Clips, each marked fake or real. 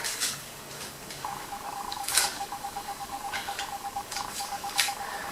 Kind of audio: fake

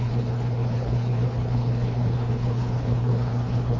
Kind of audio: fake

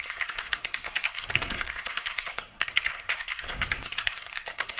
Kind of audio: fake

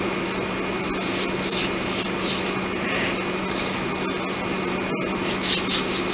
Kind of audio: real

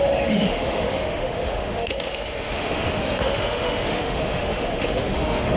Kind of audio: fake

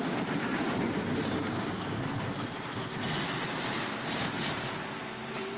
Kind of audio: fake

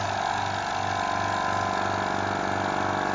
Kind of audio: real